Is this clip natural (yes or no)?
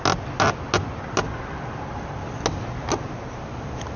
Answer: yes